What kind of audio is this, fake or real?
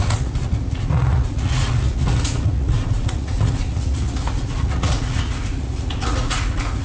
fake